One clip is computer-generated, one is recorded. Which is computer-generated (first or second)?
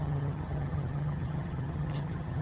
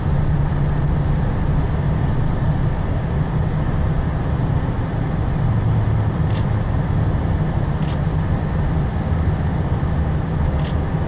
first